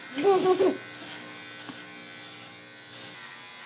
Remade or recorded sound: recorded